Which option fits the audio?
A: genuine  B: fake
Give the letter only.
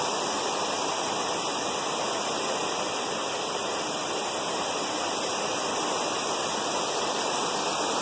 A